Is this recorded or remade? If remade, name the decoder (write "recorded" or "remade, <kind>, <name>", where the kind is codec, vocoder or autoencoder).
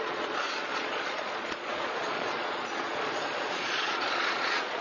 remade, vocoder, Vocos